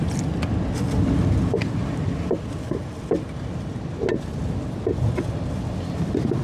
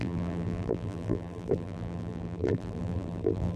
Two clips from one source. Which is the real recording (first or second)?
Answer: first